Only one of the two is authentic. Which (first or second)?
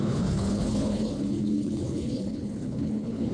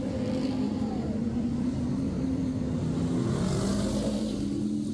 second